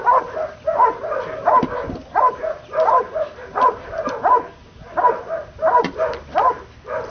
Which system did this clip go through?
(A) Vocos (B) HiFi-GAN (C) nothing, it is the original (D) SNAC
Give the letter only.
C